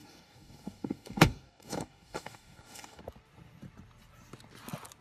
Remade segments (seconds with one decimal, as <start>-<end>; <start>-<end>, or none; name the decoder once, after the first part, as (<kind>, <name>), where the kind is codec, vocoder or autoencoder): 0.0-3.0 (codec, DAC)